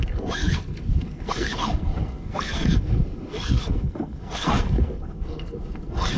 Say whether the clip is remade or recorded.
remade